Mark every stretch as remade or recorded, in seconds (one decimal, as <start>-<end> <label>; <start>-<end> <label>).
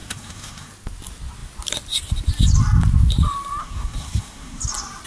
0.0-0.7 remade; 0.7-3.6 recorded; 3.6-4.6 remade; 4.6-5.1 recorded